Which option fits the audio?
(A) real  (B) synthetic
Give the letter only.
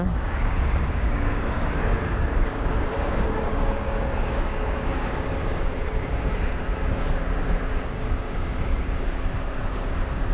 B